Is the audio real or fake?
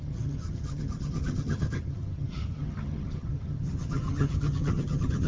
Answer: fake